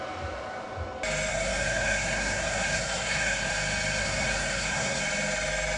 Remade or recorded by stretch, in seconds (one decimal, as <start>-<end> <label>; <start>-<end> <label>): 0.0-1.3 recorded; 1.3-3.5 remade; 3.5-4.0 recorded; 4.0-5.0 remade; 5.0-5.8 recorded